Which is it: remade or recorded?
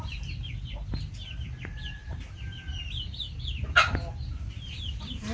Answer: recorded